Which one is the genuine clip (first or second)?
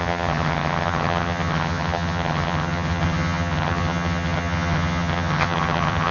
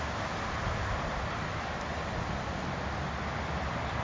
second